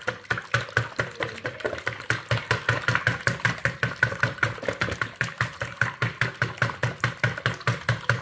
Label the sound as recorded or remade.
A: recorded